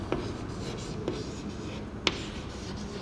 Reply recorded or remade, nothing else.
recorded